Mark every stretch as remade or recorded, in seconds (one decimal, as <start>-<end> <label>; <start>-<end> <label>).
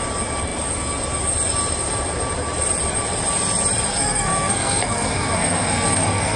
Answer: 0.0-3.9 recorded; 3.9-6.4 remade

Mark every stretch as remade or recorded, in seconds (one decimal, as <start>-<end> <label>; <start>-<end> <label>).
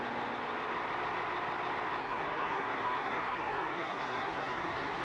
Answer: 0.0-2.0 recorded; 2.0-5.0 remade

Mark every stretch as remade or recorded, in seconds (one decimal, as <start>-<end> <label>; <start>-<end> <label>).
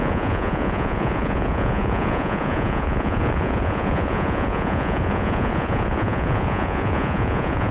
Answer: 0.0-7.7 remade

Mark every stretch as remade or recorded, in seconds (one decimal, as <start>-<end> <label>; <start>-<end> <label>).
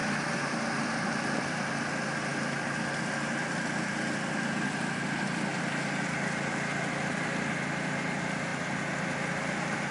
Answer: 0.0-9.9 recorded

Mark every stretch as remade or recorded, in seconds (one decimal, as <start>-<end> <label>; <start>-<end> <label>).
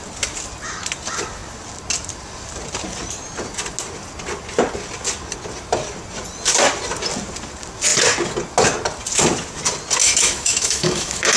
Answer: 0.0-10.0 recorded; 10.0-11.4 remade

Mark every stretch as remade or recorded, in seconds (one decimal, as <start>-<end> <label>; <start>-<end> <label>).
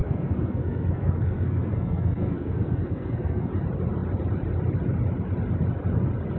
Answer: 0.0-3.5 remade; 3.5-6.4 recorded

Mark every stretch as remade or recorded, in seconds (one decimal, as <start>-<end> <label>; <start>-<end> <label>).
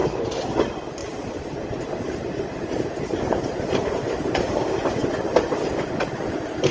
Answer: 0.0-1.0 recorded; 1.0-4.5 remade; 4.5-6.7 recorded